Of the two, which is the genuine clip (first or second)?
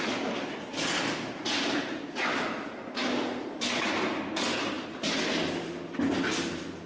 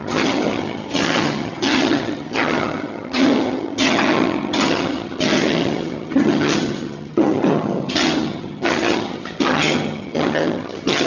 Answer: first